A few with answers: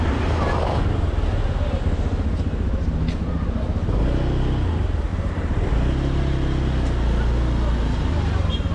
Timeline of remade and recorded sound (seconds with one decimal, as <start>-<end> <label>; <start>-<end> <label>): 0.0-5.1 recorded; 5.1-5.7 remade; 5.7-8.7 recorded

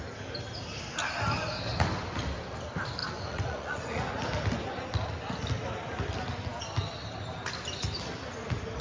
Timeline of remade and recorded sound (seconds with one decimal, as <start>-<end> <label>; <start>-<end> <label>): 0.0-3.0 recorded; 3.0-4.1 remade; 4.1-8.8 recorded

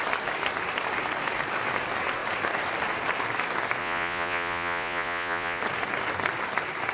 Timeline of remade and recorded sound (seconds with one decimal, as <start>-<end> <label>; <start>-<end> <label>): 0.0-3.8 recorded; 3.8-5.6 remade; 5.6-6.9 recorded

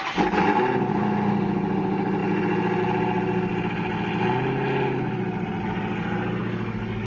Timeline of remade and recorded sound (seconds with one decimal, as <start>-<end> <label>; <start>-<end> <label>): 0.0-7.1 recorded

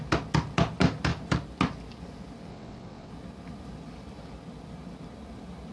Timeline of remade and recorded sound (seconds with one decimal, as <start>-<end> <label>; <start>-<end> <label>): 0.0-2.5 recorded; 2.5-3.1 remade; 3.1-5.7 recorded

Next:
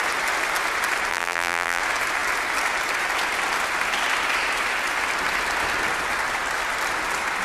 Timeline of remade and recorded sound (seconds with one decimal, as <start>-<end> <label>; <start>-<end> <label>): 0.0-1.1 recorded; 1.1-1.8 remade; 1.8-7.4 recorded